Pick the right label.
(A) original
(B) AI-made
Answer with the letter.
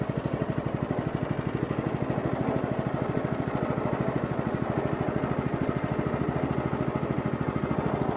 A